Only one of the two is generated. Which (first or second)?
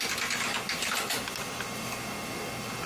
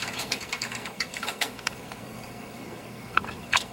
second